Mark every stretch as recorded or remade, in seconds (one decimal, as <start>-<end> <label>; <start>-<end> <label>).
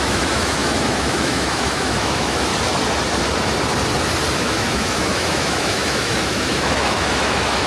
0.0-2.5 remade; 2.5-4.3 recorded; 4.3-7.7 remade